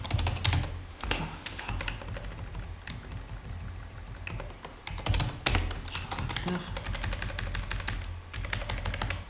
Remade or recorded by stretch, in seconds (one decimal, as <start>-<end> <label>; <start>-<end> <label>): 0.0-0.9 recorded; 0.9-1.7 remade; 1.7-9.3 recorded